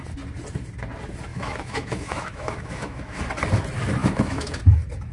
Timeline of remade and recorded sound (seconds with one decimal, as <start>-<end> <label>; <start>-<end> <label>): 0.0-1.3 recorded; 1.3-3.2 remade; 3.2-4.0 recorded; 4.0-4.6 remade; 4.6-5.1 recorded